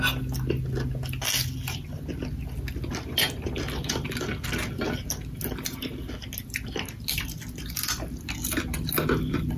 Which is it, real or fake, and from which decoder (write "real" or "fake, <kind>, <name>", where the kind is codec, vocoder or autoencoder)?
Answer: real